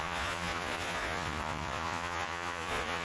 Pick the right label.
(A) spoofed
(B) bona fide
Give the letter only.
A